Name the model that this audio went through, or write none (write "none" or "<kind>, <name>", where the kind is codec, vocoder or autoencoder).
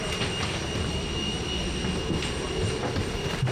none